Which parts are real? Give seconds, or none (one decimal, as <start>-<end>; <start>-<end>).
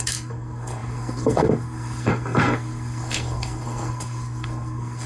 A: none